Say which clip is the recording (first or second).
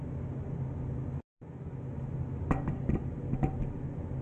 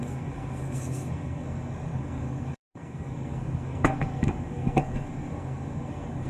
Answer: first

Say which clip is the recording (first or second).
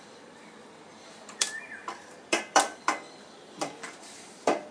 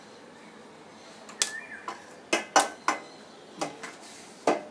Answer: second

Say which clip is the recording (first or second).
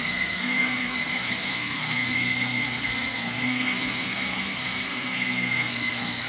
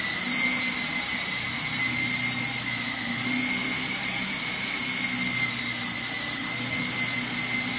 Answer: second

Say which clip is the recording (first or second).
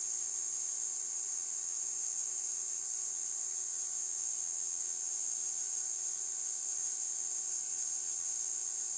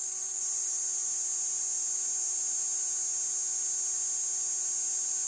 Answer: second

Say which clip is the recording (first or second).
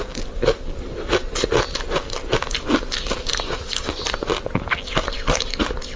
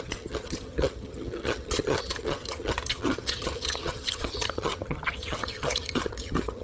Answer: first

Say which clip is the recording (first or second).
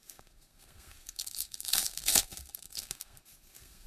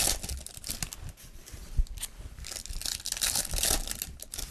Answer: second